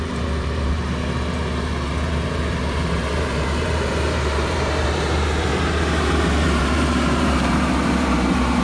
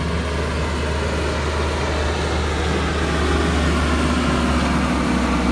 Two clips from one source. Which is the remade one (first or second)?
first